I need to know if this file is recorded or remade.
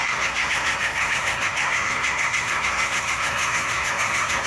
remade